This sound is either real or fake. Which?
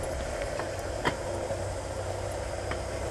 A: real